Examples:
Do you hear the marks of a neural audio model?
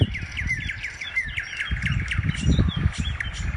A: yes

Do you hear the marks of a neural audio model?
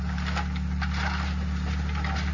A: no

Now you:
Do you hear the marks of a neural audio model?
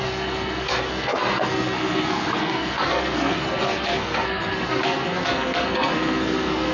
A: yes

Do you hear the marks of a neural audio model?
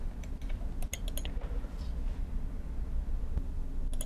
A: no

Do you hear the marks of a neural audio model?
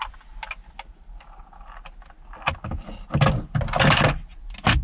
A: no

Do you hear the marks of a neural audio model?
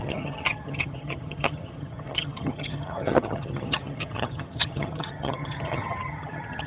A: yes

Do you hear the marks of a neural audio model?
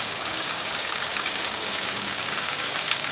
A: yes